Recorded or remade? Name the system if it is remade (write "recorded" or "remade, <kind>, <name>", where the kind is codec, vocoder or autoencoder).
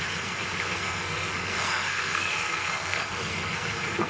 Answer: remade, codec, SNAC